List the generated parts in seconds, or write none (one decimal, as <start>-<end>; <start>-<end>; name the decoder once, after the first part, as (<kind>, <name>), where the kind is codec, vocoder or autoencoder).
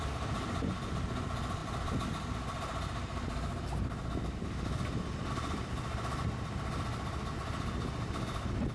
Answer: none